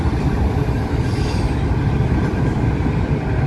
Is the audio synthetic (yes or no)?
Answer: no